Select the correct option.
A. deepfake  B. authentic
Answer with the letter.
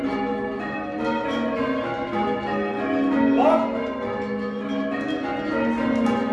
B